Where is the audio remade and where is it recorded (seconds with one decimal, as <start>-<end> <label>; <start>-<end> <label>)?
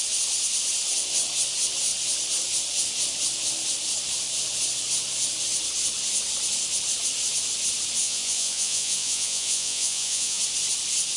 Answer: 0.0-8.0 recorded; 8.0-10.4 remade; 10.4-11.2 recorded